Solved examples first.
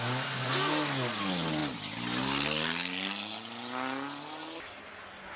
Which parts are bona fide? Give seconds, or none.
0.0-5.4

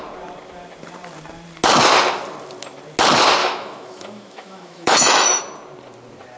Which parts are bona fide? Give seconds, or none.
0.0-3.4; 5.4-6.4

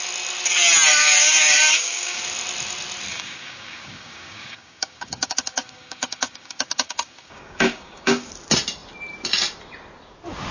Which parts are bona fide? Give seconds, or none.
0.0-0.9; 2.2-3.1; 8.3-10.5

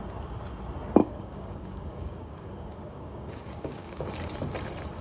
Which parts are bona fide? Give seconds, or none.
0.0-1.0; 4.0-5.0

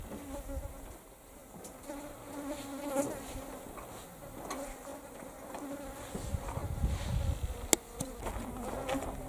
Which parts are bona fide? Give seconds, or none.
0.0-9.3

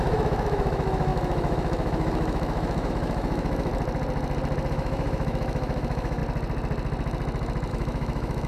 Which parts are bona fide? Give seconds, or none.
3.7-4.7; 6.2-7.7

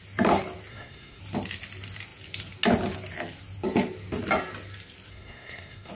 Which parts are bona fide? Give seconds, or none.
0.0-0.7; 1.2-5.1

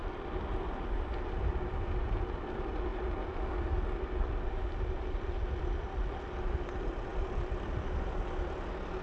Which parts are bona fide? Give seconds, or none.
0.0-7.1; 8.2-9.0